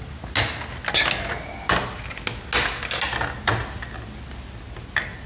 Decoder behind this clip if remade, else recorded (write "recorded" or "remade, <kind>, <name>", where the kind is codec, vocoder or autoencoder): recorded